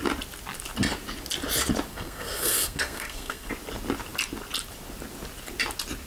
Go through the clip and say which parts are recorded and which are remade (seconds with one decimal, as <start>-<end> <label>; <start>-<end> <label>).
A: 0.0-1.9 recorded; 1.9-3.5 remade; 3.5-6.1 recorded